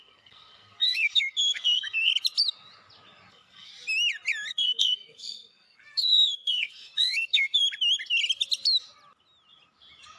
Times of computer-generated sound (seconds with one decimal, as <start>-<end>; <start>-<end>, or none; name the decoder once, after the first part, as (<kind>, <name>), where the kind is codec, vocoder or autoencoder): 0.0-2.1 (codec, SNAC); 3.3-3.7; 4.5-7.6